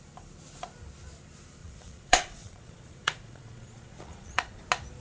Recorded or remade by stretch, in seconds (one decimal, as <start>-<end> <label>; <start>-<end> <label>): 0.0-1.6 recorded; 1.6-4.6 remade; 4.6-5.0 recorded